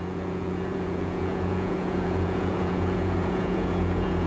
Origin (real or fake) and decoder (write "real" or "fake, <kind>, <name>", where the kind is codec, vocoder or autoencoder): fake, vocoder, Vocos